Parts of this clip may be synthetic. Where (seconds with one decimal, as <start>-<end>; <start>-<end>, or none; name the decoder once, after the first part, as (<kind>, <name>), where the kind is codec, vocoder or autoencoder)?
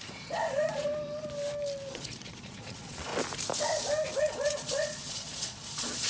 0.0-0.9 (vocoder, Vocos); 1.9-3.1; 4.2-6.1